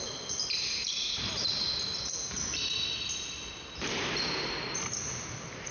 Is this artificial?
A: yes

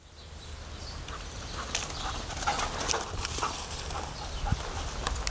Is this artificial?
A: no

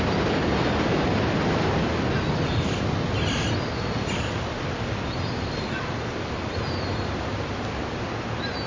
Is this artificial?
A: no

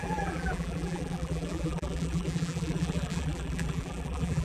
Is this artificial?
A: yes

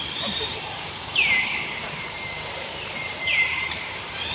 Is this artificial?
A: yes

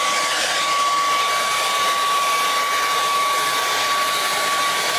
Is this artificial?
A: no